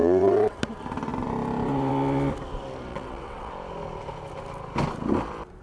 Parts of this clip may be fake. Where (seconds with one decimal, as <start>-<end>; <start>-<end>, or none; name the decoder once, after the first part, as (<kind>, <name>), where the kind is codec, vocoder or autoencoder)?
0.0-0.6 (vocoder, WaveNeXt); 2.9-3.5